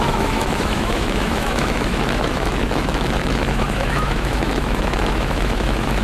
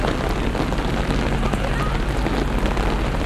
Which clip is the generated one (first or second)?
first